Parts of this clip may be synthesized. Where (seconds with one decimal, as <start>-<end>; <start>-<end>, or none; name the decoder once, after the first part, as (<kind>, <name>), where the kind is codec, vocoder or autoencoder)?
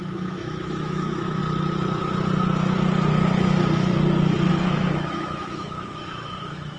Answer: 0.0-1.4 (autoencoder, DAC-VAE); 4.5-6.8